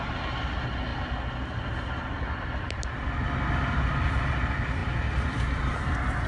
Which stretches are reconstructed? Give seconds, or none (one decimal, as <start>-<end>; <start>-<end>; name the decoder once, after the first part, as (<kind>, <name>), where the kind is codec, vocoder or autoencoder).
none

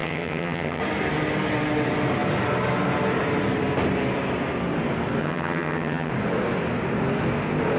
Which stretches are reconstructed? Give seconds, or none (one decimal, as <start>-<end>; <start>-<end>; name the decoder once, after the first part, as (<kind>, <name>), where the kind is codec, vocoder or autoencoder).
0.0-0.8 (vocoder, HiFi-GAN); 5.2-6.1